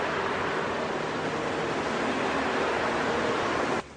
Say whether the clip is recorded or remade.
recorded